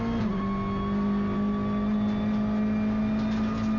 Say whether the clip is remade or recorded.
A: recorded